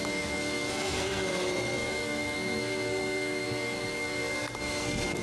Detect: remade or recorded remade